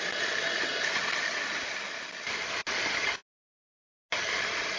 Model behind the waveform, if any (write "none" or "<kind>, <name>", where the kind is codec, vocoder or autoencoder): none